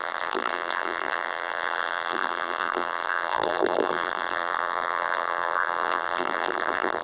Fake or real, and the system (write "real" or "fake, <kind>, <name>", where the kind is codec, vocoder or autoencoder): fake, vocoder, BigVGAN v2